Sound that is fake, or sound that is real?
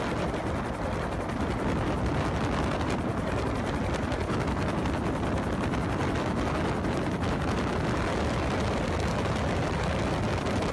real